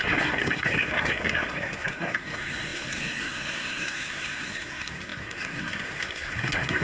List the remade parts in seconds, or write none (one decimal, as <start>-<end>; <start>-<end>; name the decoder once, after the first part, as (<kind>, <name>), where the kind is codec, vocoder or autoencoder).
0.0-6.8 (codec, SNAC)